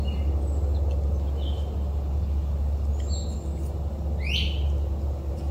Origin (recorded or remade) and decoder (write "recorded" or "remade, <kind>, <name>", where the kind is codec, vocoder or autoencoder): recorded